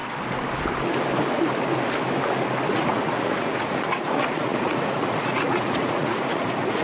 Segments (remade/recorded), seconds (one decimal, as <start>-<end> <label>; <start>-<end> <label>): 0.0-2.7 recorded; 2.7-6.8 remade